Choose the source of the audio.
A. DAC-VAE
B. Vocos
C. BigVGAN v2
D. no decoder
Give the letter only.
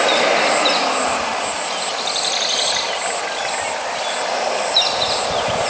D